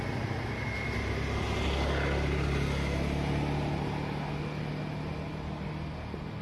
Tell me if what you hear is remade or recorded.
recorded